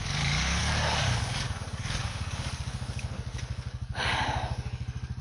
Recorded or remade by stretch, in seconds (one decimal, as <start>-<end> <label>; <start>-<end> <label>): 0.0-5.2 remade